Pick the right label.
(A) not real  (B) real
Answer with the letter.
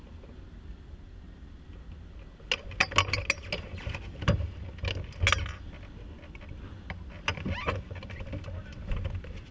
B